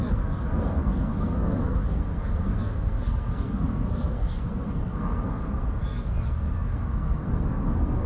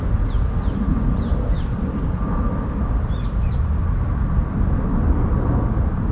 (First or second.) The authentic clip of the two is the second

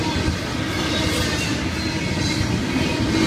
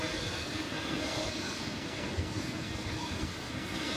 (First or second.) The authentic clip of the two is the first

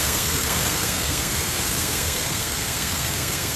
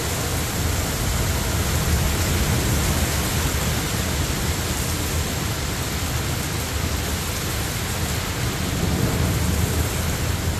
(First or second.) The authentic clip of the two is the second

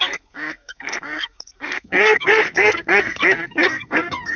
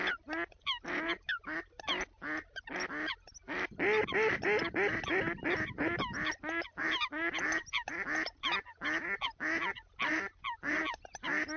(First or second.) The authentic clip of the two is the second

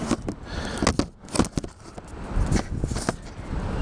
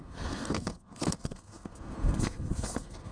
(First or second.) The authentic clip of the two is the first